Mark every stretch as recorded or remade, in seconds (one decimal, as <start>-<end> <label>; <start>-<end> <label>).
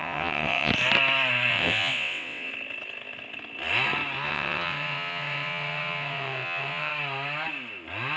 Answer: 0.0-0.7 remade; 0.7-1.5 recorded; 1.5-2.5 remade; 2.5-4.3 recorded; 4.3-6.9 remade; 6.9-8.2 recorded